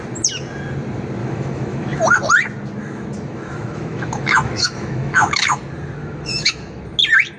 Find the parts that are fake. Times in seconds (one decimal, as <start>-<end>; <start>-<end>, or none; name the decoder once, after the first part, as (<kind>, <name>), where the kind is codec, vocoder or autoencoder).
1.2-2.0 (autoencoder, DAC-VAE); 2.8-5.6; 6.0-6.8